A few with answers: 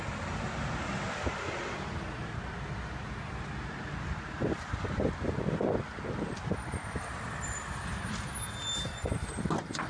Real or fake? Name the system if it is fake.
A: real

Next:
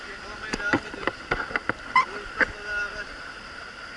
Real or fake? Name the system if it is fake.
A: real